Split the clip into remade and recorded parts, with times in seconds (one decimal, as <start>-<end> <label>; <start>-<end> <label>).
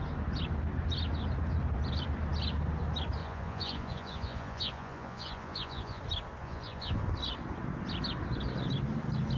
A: 0.0-3.2 recorded; 3.2-6.0 remade; 6.0-6.4 recorded; 6.4-7.0 remade; 7.0-9.4 recorded